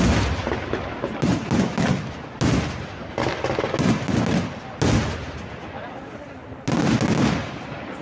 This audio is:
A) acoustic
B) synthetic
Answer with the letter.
A